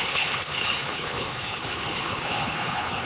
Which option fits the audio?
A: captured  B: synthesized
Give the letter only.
B